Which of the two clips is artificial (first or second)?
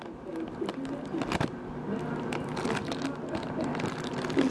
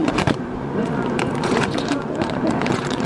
second